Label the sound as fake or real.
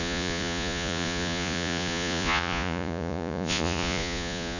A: fake